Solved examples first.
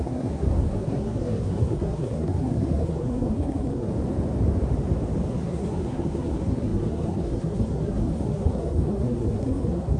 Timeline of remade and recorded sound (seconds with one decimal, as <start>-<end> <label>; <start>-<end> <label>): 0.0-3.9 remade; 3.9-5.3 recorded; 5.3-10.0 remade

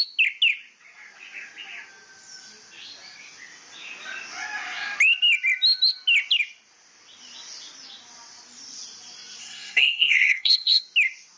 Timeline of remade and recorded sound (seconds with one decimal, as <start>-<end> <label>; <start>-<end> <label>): 0.0-9.4 recorded; 9.4-10.8 remade; 10.8-11.4 recorded

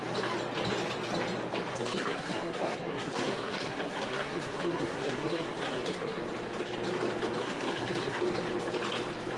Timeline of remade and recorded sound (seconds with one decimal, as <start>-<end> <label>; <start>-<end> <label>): 0.0-1.7 recorded; 1.7-6.2 remade; 6.2-7.4 recorded; 7.4-8.2 remade; 8.2-9.4 recorded

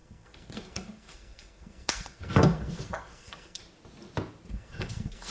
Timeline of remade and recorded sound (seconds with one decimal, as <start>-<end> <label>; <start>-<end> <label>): 0.0-3.6 remade; 3.6-4.5 recorded; 4.5-5.3 remade

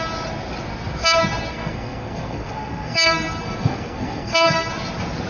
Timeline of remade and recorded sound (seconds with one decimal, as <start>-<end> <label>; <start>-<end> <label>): 0.0-1.5 recorded; 1.5-4.7 remade; 4.7-5.3 recorded

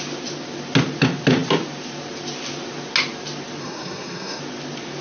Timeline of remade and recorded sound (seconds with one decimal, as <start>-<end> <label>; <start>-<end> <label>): 0.0-3.6 recorded; 3.6-4.4 remade; 4.4-5.0 recorded

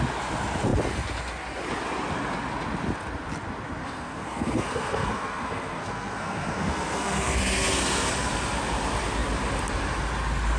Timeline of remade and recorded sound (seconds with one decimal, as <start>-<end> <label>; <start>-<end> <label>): 0.0-3.8 recorded; 3.8-8.1 remade; 8.1-10.6 recorded